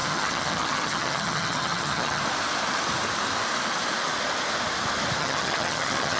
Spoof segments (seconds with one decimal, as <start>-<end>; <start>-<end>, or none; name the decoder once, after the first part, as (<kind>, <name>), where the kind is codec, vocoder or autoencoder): 0.0-2.2 (vocoder, HiFi-GAN); 5.2-6.2